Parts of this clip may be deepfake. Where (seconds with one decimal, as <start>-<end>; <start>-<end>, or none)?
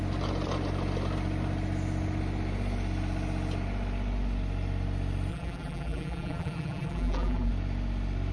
5.3-7.5